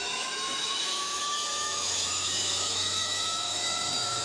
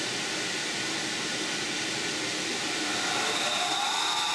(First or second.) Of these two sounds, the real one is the second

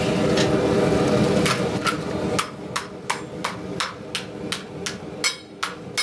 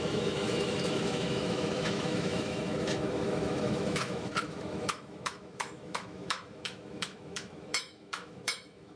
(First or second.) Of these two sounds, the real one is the first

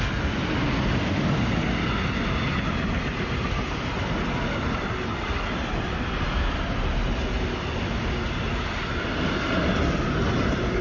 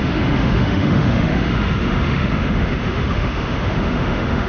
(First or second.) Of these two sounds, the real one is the first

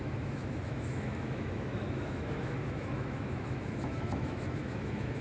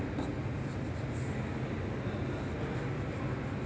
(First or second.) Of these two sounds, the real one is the second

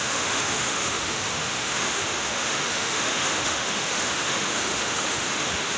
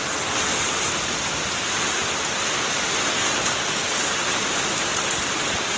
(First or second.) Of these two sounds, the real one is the second